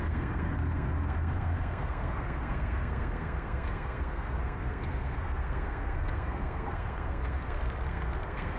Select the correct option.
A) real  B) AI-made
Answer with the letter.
B